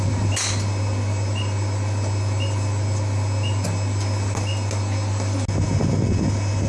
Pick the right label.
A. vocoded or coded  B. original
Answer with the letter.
B